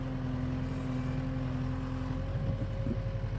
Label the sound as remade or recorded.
recorded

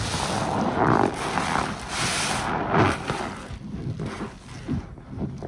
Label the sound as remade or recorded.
recorded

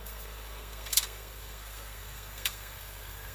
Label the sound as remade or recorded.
remade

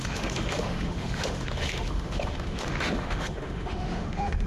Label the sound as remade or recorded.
remade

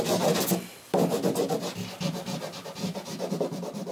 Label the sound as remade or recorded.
recorded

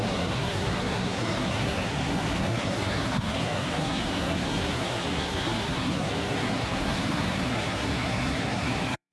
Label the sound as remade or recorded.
remade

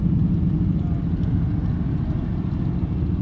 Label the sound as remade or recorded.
recorded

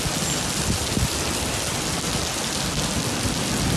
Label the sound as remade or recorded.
recorded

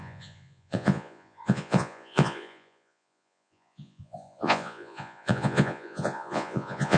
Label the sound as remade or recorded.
remade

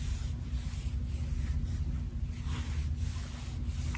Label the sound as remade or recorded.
recorded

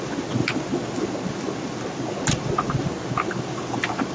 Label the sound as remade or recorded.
recorded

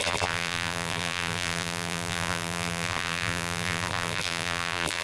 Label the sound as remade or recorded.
remade